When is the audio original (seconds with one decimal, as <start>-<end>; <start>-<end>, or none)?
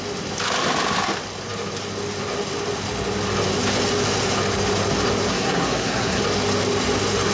0.0-5.3; 6.2-7.3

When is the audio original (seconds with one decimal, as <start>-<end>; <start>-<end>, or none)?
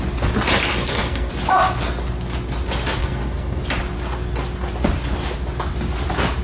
0.0-0.7; 1.3-3.0; 3.6-6.4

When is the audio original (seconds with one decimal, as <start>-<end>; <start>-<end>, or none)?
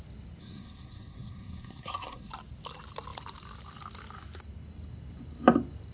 0.0-0.4; 2.3-5.9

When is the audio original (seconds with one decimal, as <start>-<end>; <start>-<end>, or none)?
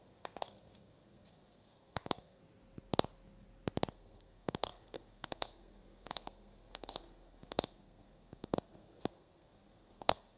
2.4-3.9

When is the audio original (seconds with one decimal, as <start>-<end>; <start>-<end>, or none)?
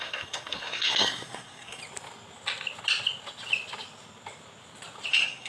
1.8-5.1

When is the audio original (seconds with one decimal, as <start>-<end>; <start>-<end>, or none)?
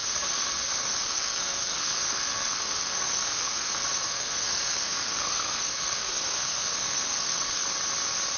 7.6-8.4